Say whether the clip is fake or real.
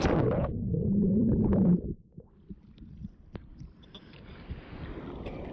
fake